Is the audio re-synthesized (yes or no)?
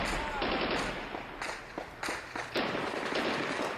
no